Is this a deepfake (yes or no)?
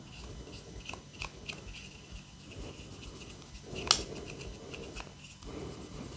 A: no